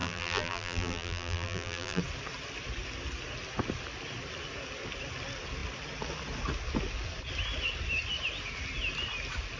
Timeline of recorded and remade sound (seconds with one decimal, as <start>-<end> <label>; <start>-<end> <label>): 0.0-2.0 remade; 2.0-9.6 recorded